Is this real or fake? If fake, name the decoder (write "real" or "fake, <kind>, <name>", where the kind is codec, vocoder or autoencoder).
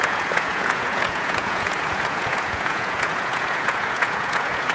fake, vocoder, Vocos